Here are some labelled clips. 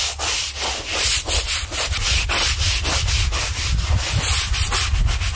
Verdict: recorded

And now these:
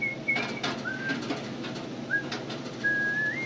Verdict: recorded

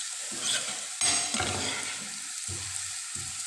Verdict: recorded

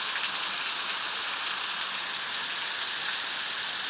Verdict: recorded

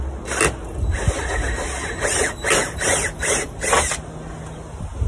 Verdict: recorded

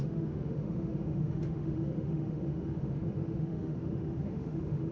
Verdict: remade